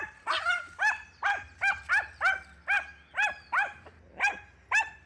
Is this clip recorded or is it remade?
recorded